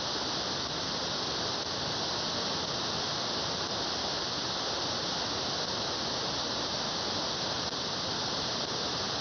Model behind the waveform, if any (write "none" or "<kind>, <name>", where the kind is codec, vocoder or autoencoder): none